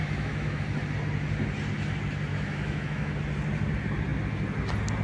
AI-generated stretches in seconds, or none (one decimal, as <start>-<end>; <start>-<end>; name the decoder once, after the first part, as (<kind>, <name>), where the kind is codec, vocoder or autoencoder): 0.0-0.6 (autoencoder, DAC-VAE); 2.3-3.1